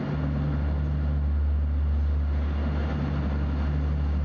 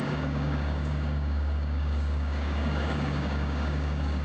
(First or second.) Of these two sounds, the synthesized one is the second